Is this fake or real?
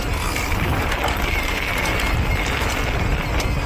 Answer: real